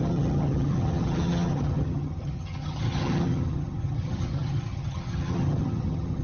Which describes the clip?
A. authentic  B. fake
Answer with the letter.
B